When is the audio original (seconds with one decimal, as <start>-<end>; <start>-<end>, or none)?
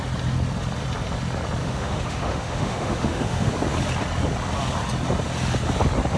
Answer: 0.0-1.6; 3.5-6.2